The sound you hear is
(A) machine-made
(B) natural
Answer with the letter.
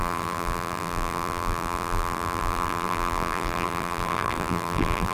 A